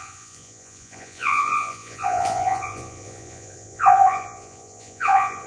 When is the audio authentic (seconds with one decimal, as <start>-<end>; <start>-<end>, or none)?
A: none